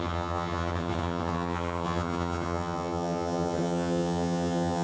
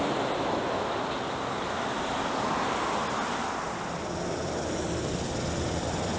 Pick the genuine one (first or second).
second